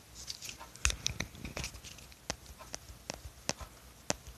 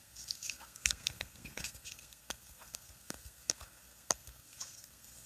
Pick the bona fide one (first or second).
first